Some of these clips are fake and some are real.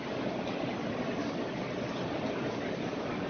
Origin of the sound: real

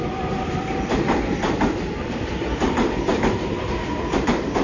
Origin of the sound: fake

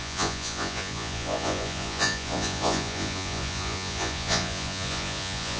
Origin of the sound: fake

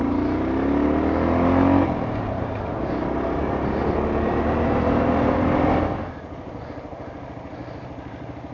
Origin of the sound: real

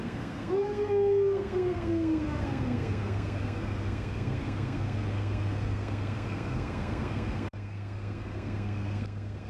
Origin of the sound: fake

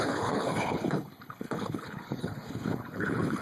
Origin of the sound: fake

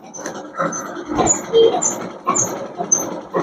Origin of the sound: real